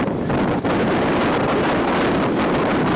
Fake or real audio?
real